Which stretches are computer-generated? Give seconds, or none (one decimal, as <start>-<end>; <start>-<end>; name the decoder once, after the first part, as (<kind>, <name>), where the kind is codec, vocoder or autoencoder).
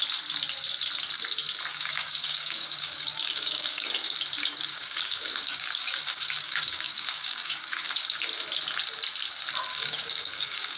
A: 1.7-3.9 (codec, DAC); 4.7-8.2; 9.7-10.8